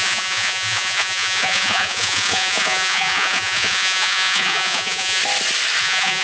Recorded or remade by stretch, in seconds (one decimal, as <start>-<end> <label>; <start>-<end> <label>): 0.0-5.2 remade; 5.2-5.8 recorded; 5.8-6.2 remade

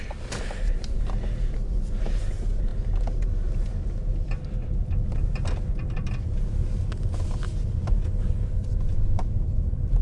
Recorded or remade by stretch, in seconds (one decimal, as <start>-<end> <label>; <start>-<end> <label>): 0.0-2.7 remade; 2.7-3.2 recorded; 3.2-3.7 remade; 3.7-8.2 recorded; 8.2-10.0 remade

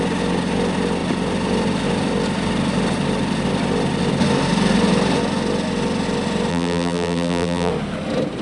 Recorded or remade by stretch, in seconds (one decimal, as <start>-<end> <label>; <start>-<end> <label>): 0.0-6.5 recorded; 6.5-7.7 remade; 7.7-8.4 recorded

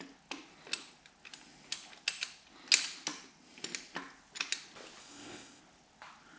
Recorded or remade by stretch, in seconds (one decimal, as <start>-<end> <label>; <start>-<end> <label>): 0.0-5.0 recorded; 5.0-5.6 remade; 5.6-6.4 recorded

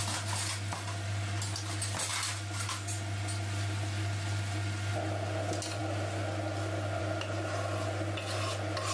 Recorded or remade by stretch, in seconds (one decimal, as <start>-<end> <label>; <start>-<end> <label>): 0.0-8.9 recorded

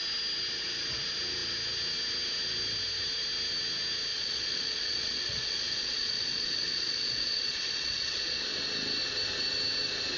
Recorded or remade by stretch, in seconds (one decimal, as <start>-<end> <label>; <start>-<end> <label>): 0.0-4.1 recorded; 4.1-8.6 remade; 8.6-10.2 recorded